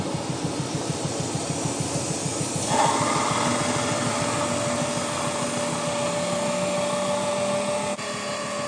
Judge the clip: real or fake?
real